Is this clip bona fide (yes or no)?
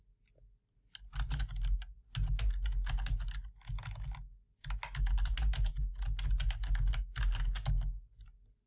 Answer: yes